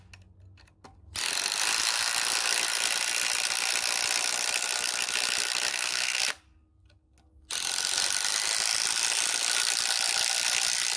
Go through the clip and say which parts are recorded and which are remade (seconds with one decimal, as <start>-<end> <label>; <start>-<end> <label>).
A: 0.0-5.7 recorded; 5.7-6.2 remade; 6.2-11.0 recorded